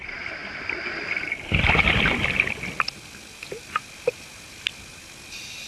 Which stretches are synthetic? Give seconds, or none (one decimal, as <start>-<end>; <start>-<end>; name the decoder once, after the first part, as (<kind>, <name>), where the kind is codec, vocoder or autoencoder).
none